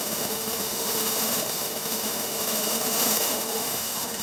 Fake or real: fake